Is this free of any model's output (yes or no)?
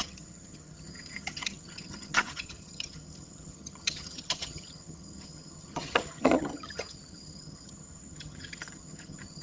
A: no